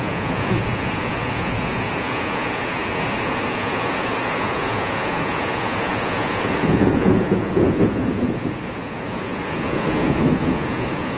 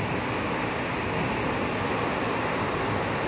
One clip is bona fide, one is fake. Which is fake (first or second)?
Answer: first